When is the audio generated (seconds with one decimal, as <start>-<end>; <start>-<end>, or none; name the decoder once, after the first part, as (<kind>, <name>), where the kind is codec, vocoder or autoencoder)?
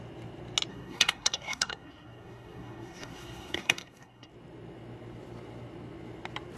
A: 0.7-4.3 (codec, SNAC)